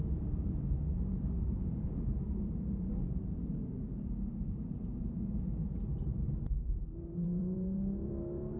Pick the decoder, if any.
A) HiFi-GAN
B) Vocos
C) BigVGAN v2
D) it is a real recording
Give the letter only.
C